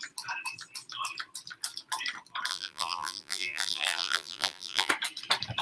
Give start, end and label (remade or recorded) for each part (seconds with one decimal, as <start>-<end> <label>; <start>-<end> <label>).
0.0-2.5 recorded; 2.5-4.9 remade; 4.9-5.6 recorded